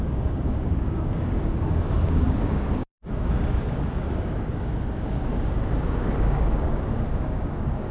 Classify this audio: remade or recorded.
remade